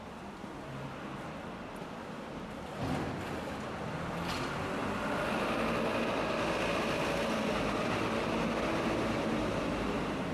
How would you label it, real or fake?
real